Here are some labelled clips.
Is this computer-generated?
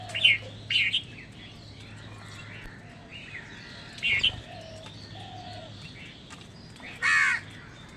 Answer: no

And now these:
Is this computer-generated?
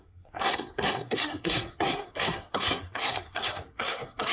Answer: yes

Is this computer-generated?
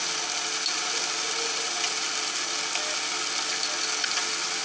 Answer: no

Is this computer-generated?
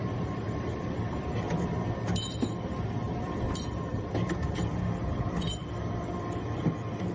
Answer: yes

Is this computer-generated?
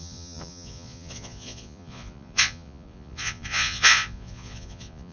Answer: yes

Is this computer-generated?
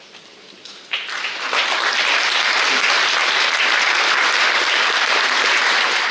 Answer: yes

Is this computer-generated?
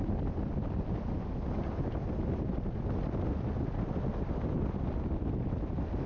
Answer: no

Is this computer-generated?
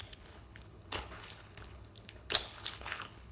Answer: yes